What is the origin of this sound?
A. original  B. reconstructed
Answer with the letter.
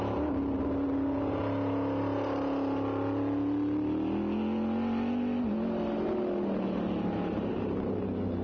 A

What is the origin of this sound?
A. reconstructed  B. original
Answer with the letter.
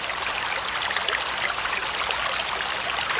B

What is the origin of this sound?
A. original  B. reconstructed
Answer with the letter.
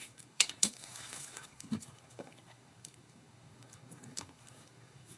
B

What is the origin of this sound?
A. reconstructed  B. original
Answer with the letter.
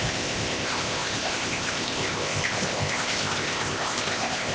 A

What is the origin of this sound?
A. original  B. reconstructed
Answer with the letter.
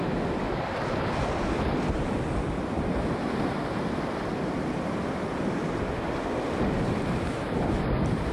A